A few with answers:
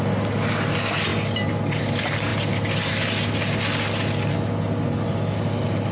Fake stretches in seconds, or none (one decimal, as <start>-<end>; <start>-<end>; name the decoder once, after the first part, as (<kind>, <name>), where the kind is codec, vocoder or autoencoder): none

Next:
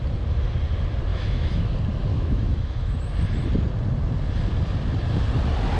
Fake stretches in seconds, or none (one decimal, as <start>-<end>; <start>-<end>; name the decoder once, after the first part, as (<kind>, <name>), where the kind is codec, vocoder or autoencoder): 1.1-1.7 (autoencoder, DAC-VAE); 2.1-3.0

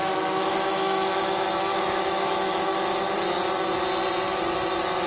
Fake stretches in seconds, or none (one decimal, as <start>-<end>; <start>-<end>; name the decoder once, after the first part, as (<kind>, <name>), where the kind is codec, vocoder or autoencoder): 0.0-3.1 (autoencoder, DAC-VAE)